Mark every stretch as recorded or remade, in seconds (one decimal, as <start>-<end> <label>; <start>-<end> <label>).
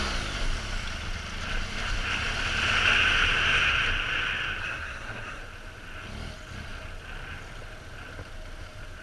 0.0-4.6 recorded; 4.6-5.4 remade; 5.4-9.0 recorded